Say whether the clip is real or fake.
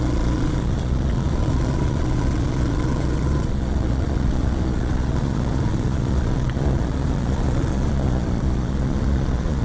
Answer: fake